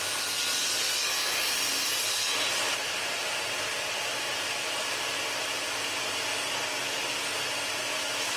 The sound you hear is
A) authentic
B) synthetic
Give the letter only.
A